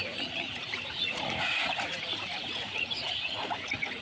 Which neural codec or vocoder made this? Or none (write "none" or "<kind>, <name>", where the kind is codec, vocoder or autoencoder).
vocoder, Vocos